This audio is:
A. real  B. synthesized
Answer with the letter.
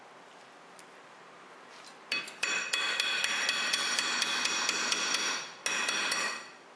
A